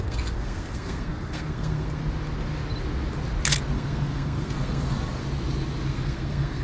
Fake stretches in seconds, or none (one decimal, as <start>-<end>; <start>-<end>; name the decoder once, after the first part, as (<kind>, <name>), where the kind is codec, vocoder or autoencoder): 0.0-2.0 (codec, SNAC); 3.7-5.2; 5.9-6.6